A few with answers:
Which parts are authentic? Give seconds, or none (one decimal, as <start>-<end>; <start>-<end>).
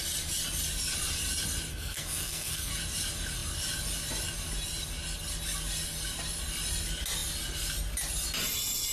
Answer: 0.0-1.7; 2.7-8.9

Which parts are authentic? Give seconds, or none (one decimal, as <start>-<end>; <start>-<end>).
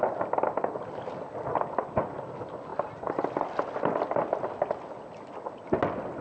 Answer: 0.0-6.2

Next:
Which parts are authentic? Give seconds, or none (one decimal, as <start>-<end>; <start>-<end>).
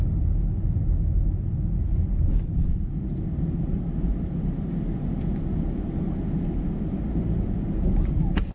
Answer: 0.0-8.5